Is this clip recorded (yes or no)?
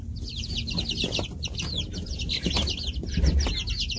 yes